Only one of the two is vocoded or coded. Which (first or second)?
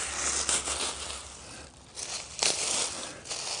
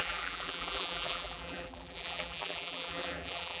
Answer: second